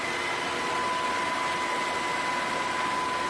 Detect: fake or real real